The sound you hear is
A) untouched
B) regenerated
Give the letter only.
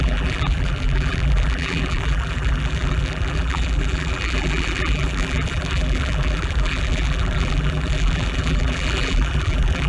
B